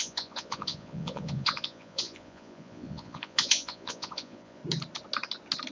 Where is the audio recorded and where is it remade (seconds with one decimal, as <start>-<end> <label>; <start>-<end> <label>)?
0.0-4.6 remade; 4.6-5.7 recorded